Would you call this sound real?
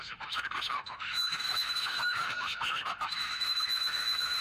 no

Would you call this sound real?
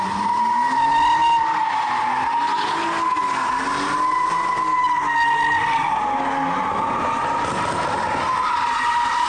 yes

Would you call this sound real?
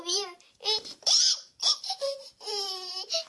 no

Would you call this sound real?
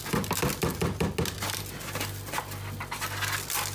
yes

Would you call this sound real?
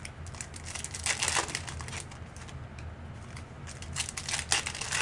yes